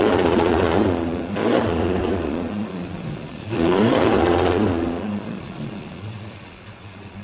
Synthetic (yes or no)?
yes